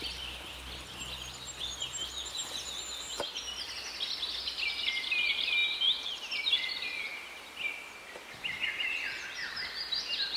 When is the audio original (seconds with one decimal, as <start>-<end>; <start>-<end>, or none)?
0.0-10.4